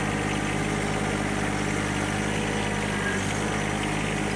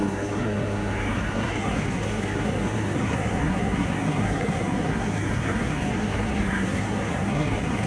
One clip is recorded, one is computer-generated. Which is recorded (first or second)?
first